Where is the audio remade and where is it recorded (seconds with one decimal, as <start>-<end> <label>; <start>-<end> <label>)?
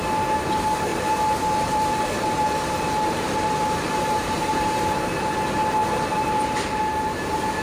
0.0-0.9 recorded; 0.9-5.3 remade; 5.3-5.8 recorded; 5.8-6.8 remade; 6.8-7.6 recorded